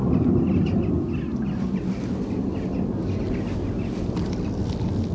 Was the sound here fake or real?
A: real